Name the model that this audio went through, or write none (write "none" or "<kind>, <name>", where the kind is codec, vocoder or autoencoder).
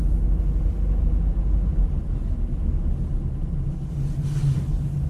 none